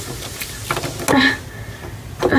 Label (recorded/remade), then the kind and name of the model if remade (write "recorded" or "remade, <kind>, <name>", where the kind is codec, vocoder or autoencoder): recorded